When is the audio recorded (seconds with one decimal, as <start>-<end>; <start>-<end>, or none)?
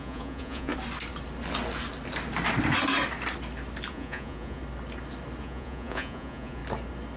0.7-3.9; 4.6-5.4; 6.6-7.2